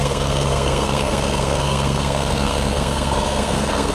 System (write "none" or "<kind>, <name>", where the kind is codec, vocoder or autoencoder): codec, SNAC